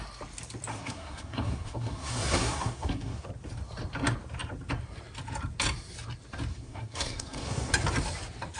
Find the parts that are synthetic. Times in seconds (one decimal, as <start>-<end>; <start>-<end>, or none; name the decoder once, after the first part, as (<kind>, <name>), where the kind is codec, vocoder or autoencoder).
0.7-3.3 (codec, SNAC); 6.5-7.7